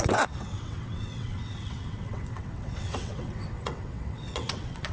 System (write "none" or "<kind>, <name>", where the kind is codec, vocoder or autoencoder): vocoder, WaveNeXt